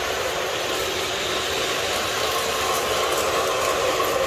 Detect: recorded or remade recorded